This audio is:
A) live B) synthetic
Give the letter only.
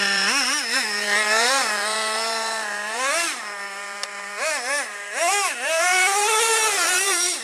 B